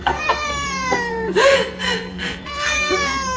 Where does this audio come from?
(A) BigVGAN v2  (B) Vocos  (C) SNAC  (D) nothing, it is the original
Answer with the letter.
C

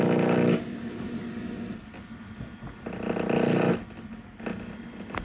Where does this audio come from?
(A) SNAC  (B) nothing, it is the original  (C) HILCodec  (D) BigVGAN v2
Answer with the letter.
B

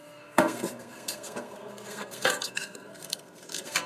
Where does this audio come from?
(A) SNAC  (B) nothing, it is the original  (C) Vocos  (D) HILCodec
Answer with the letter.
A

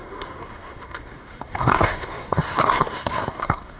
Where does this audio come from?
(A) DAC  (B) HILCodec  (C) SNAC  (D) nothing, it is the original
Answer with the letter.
C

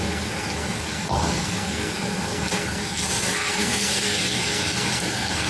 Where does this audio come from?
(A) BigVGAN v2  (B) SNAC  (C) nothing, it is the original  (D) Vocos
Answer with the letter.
B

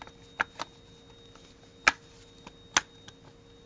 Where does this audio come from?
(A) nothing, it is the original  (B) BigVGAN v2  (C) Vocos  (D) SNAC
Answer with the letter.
A